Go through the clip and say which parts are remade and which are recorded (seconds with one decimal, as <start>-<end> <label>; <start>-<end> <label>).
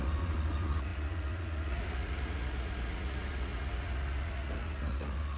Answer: 0.0-5.4 remade